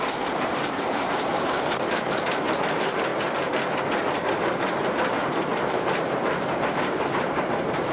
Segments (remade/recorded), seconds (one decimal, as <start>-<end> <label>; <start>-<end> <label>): 0.0-3.1 remade; 3.1-4.3 recorded; 4.3-7.9 remade